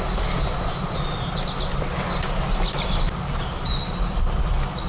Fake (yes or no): no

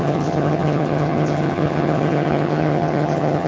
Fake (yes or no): yes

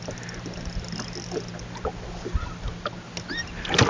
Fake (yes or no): no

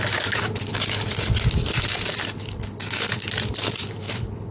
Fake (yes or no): no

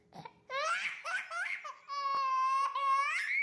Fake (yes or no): no